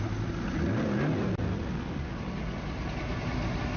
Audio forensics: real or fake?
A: real